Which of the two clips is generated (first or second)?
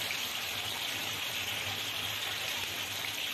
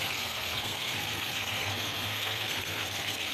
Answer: second